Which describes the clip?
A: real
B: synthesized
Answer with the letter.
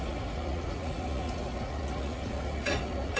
B